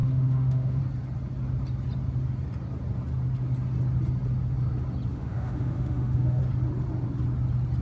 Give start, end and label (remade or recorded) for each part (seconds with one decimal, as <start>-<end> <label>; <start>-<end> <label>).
0.0-0.8 remade; 0.8-5.1 recorded; 5.1-6.4 remade; 6.4-7.8 recorded